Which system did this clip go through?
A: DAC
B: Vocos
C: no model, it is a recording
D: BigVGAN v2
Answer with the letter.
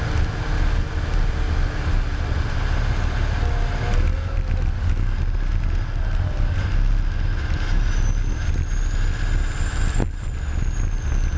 C